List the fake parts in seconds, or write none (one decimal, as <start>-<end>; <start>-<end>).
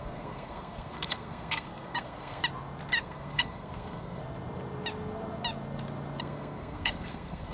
0.0-2.4; 3.0-4.2; 6.2-7.5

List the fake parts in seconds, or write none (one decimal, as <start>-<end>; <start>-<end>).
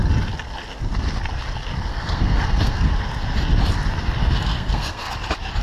1.9-2.9; 4.2-5.1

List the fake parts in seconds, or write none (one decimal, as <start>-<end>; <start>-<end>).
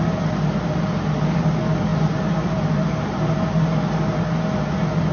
none